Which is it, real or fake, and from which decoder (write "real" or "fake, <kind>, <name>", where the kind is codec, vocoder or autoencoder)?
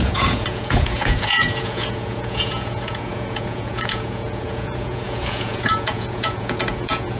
fake, vocoder, Vocos